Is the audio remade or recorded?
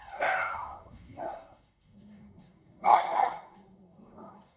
remade